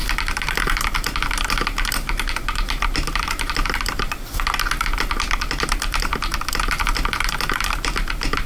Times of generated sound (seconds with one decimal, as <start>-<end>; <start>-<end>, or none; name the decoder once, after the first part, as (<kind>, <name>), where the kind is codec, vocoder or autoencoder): none